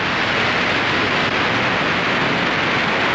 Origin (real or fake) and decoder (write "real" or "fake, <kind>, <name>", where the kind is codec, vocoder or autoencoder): real